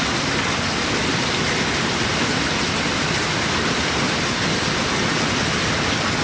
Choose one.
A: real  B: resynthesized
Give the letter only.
A